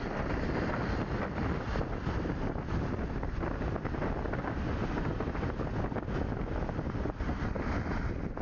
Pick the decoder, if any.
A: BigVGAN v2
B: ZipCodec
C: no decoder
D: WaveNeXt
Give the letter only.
C